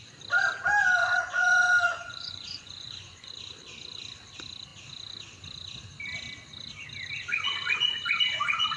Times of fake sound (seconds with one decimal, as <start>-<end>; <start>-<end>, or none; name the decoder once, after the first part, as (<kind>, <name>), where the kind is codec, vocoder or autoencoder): 1.0-3.3 (vocoder, Vocos); 7.3-8.8